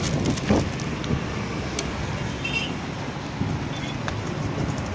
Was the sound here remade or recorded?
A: recorded